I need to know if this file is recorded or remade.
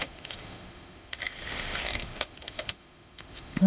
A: remade